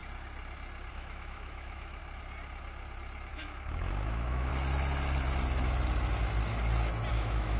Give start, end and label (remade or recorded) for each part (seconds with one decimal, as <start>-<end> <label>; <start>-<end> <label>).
0.0-0.9 recorded; 0.9-2.0 remade; 2.0-3.3 recorded; 3.3-4.5 remade; 4.5-7.1 recorded; 7.1-7.6 remade